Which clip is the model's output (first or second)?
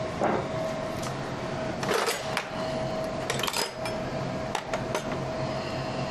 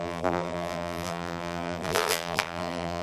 second